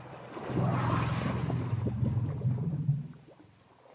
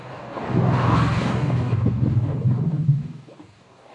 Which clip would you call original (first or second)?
first